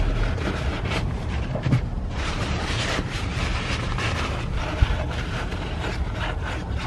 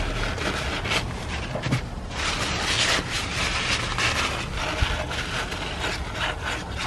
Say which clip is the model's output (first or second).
first